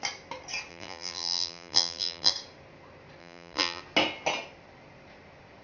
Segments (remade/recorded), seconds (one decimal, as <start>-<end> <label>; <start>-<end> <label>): 0.0-0.7 recorded; 0.7-2.3 remade; 2.3-3.2 recorded; 3.2-3.8 remade; 3.8-5.6 recorded

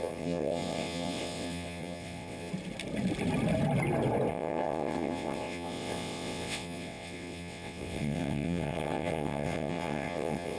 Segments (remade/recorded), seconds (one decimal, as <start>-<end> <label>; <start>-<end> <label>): 0.0-2.5 remade; 2.5-4.3 recorded; 4.3-10.6 remade